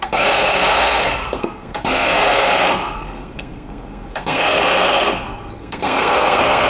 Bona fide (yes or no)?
no